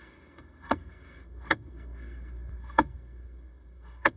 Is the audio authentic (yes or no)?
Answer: no